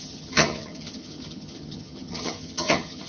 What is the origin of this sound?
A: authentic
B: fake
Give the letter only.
B